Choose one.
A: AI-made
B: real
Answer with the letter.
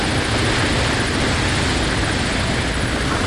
B